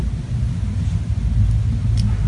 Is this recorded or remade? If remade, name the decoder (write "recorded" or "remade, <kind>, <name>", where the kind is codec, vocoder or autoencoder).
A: recorded